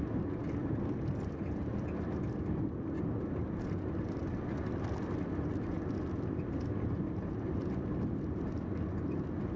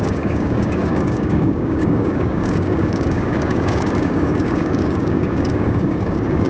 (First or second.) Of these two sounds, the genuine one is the first